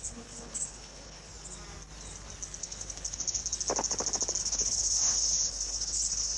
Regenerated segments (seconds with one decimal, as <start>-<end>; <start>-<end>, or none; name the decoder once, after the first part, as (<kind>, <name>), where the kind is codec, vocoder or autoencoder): 0.0-1.3 (codec, HILCodec); 2.6-3.4; 4.4-6.4